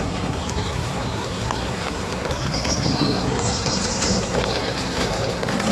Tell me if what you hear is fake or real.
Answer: fake